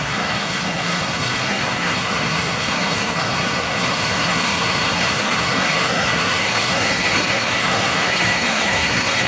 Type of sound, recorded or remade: remade